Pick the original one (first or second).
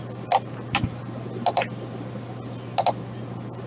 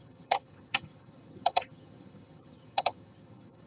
first